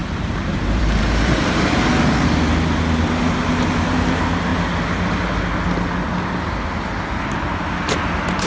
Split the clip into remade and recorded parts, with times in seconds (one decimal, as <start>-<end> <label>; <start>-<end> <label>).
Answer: 0.0-1.9 remade; 1.9-3.9 recorded; 3.9-4.5 remade; 4.5-7.2 recorded; 7.2-8.5 remade